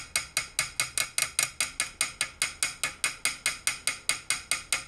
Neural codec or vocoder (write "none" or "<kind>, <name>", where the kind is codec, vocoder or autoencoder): none